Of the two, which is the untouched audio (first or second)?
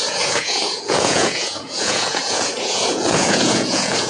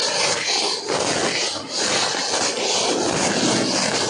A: second